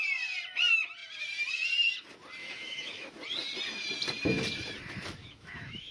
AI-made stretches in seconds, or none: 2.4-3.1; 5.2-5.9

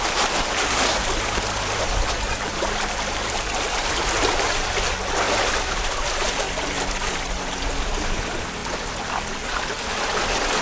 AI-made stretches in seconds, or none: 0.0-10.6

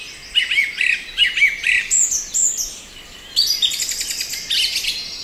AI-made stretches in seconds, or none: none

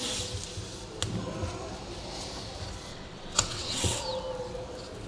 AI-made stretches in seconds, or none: 2.9-4.0

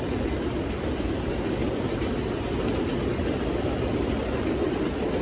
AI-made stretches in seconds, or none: none

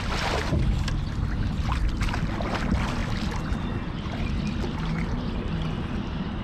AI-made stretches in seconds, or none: none

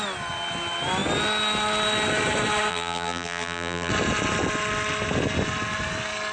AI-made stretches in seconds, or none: 2.7-3.9